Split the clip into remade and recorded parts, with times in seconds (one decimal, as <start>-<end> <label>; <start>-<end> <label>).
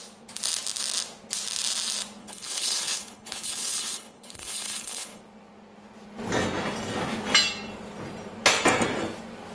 0.0-2.2 recorded; 2.2-5.2 remade; 5.2-9.5 recorded